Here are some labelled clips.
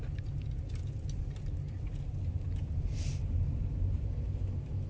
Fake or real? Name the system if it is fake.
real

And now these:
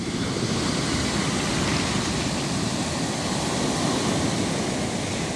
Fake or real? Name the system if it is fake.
real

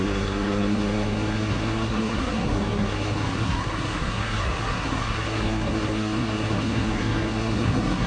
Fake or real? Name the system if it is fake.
fake, codec, SNAC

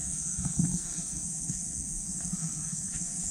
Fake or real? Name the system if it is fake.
fake, codec, SNAC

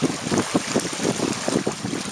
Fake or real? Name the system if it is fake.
real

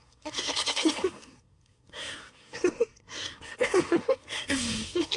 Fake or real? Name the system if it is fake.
fake, codec, SNAC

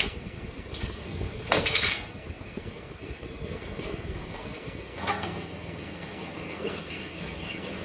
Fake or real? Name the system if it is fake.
fake, codec, SNAC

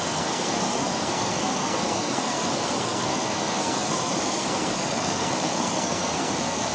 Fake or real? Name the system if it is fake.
fake, codec, SNAC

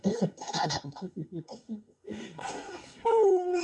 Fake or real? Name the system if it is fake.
fake, codec, SNAC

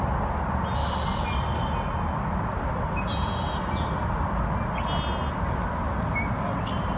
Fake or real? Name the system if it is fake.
real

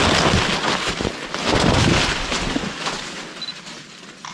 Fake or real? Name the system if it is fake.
real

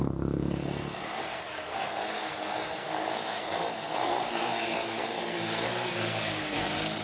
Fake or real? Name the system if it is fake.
fake, codec, SNAC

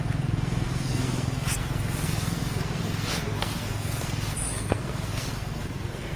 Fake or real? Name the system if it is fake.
fake, codec, SNAC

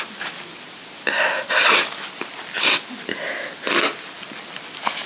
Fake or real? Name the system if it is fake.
real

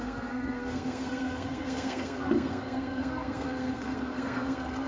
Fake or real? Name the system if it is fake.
fake, codec, SNAC